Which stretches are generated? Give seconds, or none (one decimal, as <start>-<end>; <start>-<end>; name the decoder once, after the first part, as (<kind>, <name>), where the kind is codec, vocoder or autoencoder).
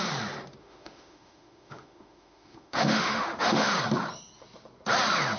0.6-3.8 (autoencoder, DAC-VAE)